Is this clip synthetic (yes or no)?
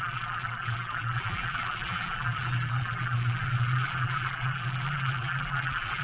yes